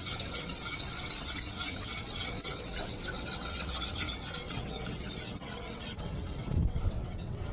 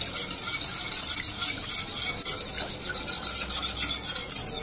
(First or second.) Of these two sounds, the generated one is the first